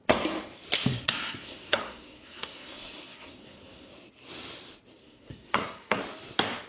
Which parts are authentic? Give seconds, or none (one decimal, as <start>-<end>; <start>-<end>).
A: 0.0-0.9; 3.9-5.0; 6.0-6.7